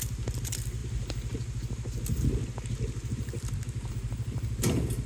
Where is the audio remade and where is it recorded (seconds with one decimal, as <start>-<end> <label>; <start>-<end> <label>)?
0.0-5.1 recorded